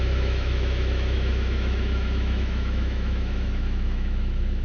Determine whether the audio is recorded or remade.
remade